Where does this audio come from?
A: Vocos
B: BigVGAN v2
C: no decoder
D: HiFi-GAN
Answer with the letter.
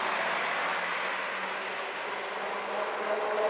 C